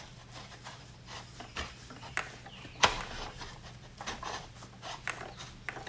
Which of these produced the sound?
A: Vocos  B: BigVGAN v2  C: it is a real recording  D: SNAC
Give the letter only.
C